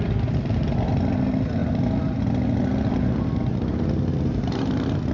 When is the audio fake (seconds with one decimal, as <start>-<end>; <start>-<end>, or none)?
none